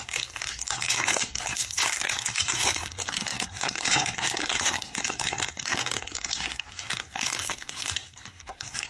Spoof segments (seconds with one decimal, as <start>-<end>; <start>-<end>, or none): 0.0-8.9